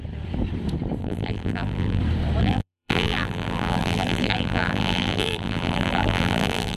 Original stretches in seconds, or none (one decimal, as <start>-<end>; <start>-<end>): 0.0-1.0; 2.0-2.4